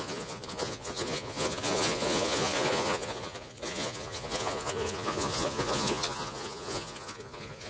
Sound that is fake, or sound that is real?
fake